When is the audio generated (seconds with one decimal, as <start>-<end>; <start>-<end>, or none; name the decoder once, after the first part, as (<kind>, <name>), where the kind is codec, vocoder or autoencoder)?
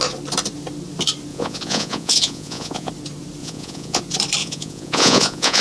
1.3-2.9 (vocoder, Vocos); 3.4-4.0; 4.4-5.6